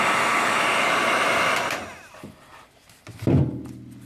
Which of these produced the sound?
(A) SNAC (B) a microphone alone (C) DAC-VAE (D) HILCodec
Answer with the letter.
B